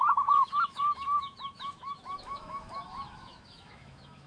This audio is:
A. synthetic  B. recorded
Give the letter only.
A